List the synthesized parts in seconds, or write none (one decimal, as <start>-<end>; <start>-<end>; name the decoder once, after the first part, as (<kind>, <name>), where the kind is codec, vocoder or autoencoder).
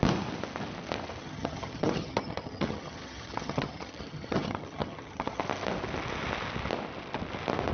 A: 1.2-5.4 (vocoder, HiFi-GAN)